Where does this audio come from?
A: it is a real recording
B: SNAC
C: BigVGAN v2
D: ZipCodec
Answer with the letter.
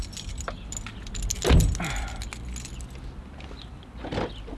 A